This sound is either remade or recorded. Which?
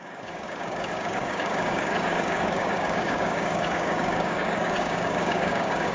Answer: remade